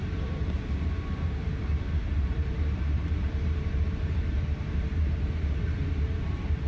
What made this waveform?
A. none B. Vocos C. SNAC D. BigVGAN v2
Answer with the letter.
D